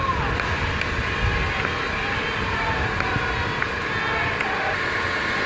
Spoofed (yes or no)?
no